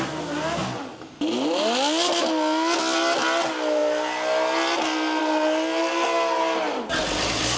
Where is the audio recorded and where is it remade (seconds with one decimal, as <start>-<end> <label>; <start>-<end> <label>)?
0.0-7.6 recorded